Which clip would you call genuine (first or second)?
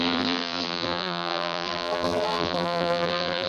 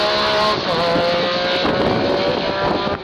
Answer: second